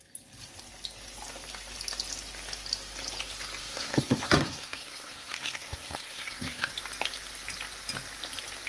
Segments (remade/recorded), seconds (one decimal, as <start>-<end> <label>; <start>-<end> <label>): 0.0-3.6 recorded; 3.6-6.7 remade; 6.7-8.7 recorded

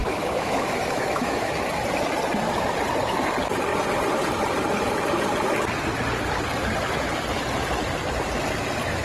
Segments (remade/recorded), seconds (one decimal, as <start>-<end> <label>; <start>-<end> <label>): 0.0-1.5 remade; 1.5-9.0 recorded